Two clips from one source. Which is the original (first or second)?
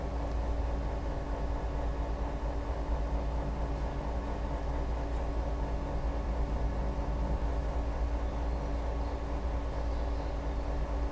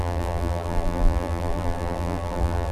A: first